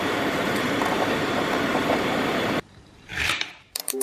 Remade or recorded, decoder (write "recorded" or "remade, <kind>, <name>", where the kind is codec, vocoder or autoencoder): remade, vocoder, BigVGAN v2